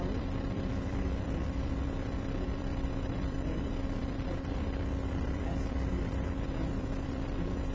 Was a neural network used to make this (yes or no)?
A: yes